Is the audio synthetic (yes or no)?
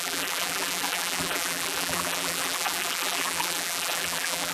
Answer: yes